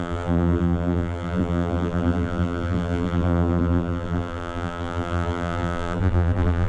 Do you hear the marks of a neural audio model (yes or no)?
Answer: yes